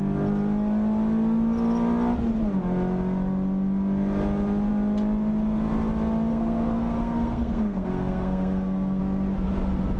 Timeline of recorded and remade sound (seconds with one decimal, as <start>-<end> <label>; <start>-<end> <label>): 0.0-6.3 recorded; 6.3-9.0 remade; 9.0-10.0 recorded